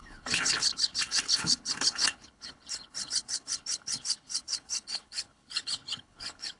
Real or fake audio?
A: fake